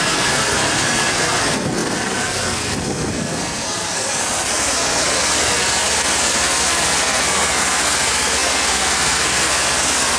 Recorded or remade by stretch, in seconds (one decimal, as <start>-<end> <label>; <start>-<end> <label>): 0.0-10.2 remade